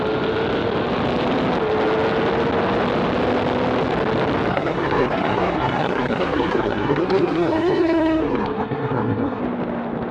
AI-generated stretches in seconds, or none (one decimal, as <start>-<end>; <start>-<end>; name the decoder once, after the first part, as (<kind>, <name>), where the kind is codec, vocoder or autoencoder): 4.5-9.4 (codec, SNAC)